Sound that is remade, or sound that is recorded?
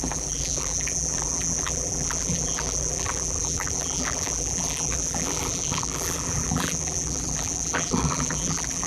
remade